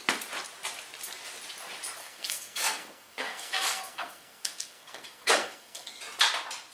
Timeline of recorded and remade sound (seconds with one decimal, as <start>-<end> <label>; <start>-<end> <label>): 0.0-2.0 recorded; 2.0-6.0 remade; 6.0-6.7 recorded